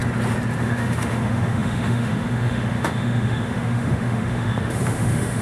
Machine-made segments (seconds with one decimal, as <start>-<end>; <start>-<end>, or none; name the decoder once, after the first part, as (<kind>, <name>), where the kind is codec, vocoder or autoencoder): 0.6-5.4 (autoencoder, DAC-VAE)